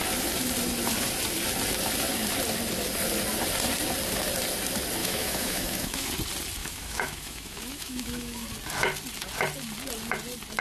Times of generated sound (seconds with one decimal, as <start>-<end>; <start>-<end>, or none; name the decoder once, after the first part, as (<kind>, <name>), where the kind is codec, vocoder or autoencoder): 5.0-6.1 (autoencoder, DAC-VAE); 6.6-8.5